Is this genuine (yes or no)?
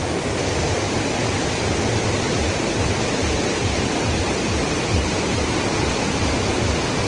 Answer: yes